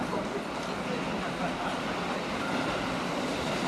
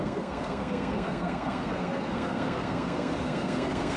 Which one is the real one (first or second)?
first